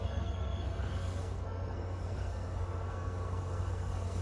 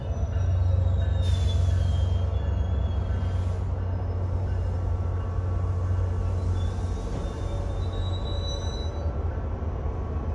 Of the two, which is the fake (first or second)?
first